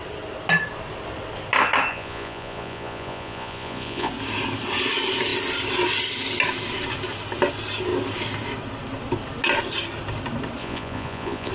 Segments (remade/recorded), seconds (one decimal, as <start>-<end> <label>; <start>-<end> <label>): 0.0-1.9 recorded; 1.9-4.1 remade; 4.1-10.6 recorded; 10.6-11.5 remade